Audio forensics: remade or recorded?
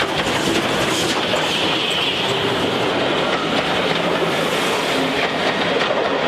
recorded